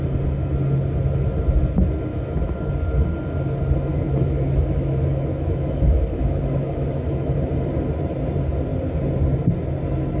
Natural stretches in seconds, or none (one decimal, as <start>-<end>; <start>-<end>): 0.0-2.1; 2.7-3.9; 7.5-10.2

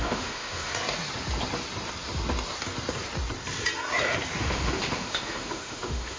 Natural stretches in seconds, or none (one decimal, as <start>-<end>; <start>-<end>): 0.7-4.4

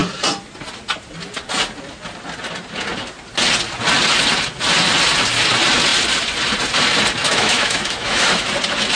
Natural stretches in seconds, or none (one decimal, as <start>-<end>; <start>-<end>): 0.0-7.2; 8.5-9.0

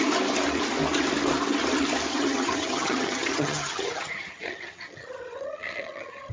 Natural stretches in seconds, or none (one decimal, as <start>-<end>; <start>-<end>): 0.0-2.1